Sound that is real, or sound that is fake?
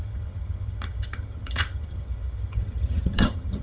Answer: fake